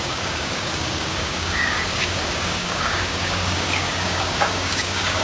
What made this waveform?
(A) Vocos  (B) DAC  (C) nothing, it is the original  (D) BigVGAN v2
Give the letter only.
B